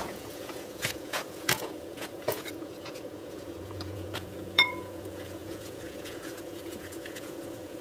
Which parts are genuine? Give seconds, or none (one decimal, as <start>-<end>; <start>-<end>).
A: none